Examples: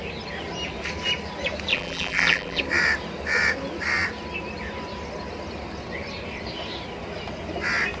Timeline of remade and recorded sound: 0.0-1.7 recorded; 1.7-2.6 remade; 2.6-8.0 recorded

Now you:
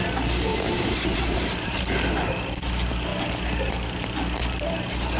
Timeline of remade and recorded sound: 0.0-0.5 recorded; 0.5-1.8 remade; 1.8-5.2 recorded